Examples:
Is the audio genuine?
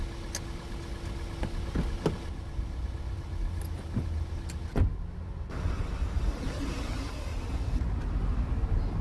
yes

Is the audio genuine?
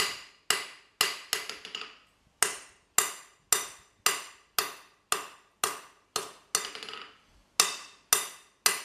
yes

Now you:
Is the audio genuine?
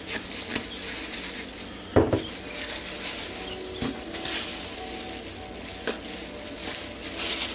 yes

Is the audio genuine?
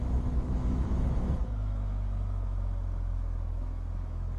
no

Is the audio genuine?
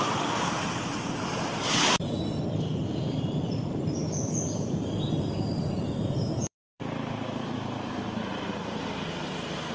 no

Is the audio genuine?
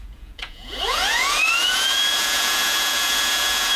no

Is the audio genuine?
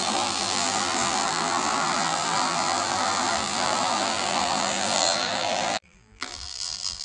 no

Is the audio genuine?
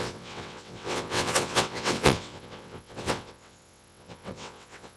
no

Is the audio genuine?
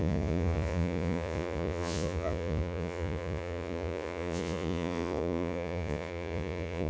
no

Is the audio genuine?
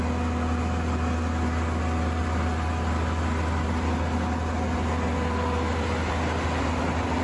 yes